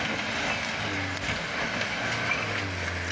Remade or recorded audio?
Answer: recorded